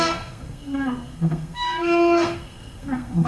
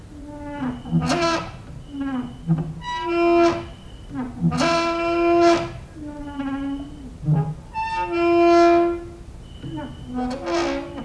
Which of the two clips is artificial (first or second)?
first